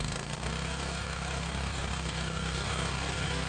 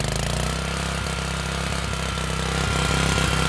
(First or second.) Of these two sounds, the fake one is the first